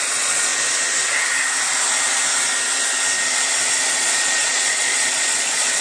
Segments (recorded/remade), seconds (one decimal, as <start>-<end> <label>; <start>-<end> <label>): 0.0-0.5 remade; 0.5-3.9 recorded; 3.9-5.8 remade

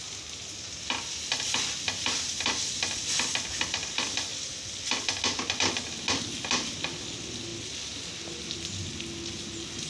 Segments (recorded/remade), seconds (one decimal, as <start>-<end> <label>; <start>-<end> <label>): 0.0-9.9 recorded

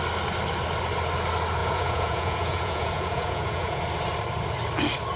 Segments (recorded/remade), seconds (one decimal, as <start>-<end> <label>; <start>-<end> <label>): 0.0-1.6 recorded; 1.6-3.8 remade; 3.8-5.2 recorded

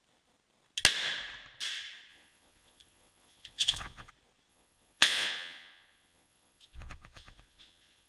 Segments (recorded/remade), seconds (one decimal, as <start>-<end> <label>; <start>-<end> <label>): 0.0-2.1 recorded; 2.1-4.1 remade; 4.1-4.5 recorded; 4.5-8.1 remade

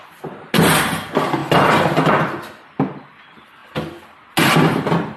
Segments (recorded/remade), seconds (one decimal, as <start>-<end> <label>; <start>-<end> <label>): 0.0-5.2 recorded

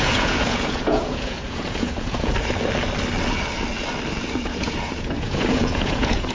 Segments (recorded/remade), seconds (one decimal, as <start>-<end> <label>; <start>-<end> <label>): 0.0-2.3 remade; 2.3-4.3 recorded; 4.3-6.3 remade

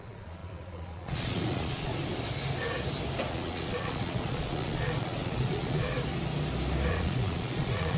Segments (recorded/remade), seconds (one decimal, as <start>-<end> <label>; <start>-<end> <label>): 0.0-1.9 remade; 1.9-3.3 recorded; 3.3-5.9 remade; 5.9-6.9 recorded; 6.9-8.0 remade